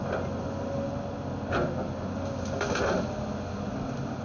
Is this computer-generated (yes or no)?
no